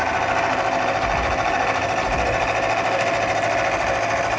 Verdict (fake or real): real